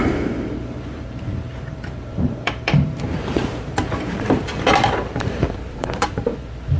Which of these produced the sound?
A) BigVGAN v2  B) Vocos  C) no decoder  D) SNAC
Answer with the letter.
A